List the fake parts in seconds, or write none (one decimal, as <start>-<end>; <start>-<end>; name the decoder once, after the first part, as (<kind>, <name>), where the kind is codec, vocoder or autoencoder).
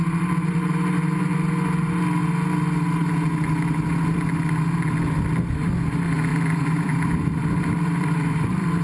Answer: 6.3-8.8 (vocoder, BigVGAN v2)